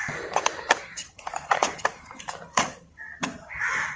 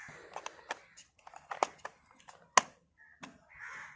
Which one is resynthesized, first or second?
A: first